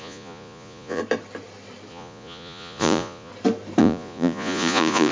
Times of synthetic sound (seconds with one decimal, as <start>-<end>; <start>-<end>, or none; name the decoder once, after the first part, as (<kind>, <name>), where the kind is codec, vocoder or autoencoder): 0.0-1.0 (vocoder, Vocos); 1.9-3.3; 3.8-5.1